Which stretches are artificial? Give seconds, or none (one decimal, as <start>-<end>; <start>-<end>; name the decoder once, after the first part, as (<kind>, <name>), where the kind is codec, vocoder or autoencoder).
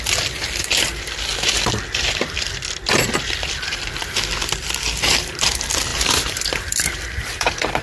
0.0-1.3 (vocoder, BigVGAN v2); 2.2-7.8